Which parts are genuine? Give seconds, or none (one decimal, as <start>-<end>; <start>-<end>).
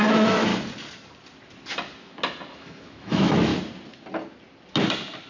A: 0.5-2.5; 3.5-5.3